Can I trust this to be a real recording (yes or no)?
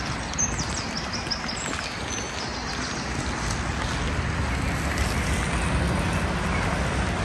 yes